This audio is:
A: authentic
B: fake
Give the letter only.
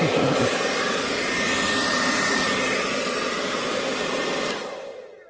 B